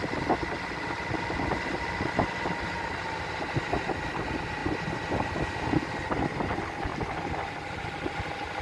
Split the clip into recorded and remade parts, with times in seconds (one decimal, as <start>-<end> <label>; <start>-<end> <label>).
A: 0.0-0.9 remade; 0.9-6.9 recorded; 6.9-7.8 remade; 7.8-8.6 recorded

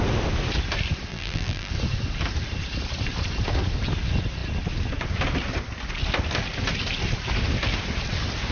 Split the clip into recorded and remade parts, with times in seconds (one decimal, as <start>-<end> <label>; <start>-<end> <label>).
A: 0.0-1.1 recorded; 1.1-1.7 remade; 1.7-8.5 recorded

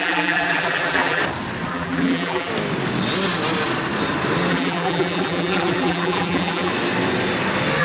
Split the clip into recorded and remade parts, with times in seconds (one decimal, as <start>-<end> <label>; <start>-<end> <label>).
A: 0.0-1.2 remade; 1.2-1.7 recorded; 1.7-2.5 remade; 2.5-4.5 recorded; 4.5-6.7 remade; 6.7-7.8 recorded

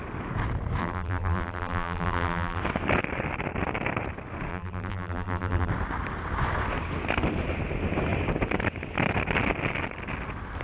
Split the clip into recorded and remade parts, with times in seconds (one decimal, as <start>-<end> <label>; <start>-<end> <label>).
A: 0.0-0.8 recorded; 0.8-2.6 remade; 2.6-4.5 recorded; 4.5-5.7 remade; 5.7-10.6 recorded

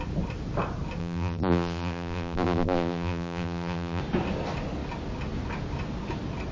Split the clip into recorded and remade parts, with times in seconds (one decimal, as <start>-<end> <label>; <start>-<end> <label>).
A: 0.0-1.0 recorded; 1.0-4.0 remade; 4.0-6.5 recorded

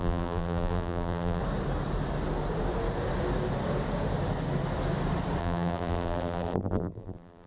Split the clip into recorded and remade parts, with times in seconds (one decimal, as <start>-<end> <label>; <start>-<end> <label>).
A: 0.0-1.4 remade; 1.4-5.4 recorded; 5.4-7.5 remade

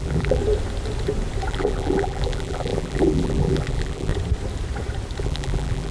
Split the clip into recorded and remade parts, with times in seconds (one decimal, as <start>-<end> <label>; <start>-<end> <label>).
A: 0.0-0.4 remade; 0.4-1.5 recorded; 1.5-4.1 remade; 4.1-5.2 recorded; 5.2-5.9 remade